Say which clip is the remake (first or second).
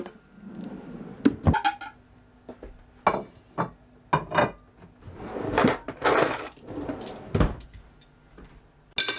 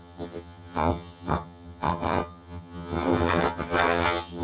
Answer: second